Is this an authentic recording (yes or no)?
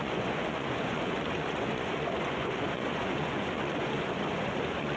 no